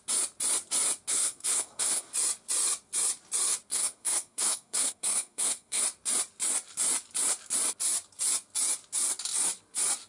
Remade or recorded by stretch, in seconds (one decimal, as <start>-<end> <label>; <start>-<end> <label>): 0.0-1.1 recorded; 1.1-2.1 remade; 2.1-3.7 recorded; 3.7-5.8 remade; 5.8-10.1 recorded